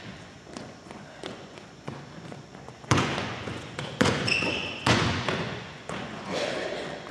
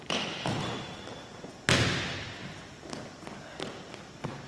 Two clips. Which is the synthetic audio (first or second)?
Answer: first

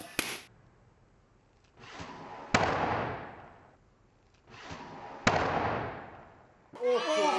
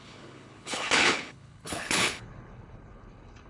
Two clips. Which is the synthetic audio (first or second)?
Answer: second